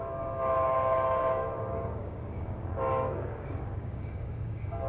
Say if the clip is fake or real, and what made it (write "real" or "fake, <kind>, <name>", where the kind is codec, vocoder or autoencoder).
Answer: fake, codec, DAC